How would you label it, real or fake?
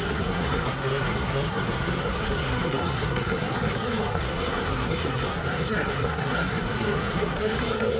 fake